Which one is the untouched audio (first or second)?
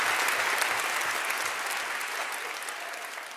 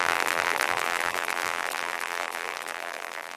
first